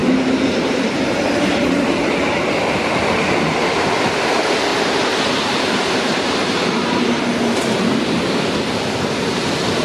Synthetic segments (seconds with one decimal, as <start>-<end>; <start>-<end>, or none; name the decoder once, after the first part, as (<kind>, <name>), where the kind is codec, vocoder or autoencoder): 0.0-1.2 (vocoder, BigVGAN v2); 4.7-7.2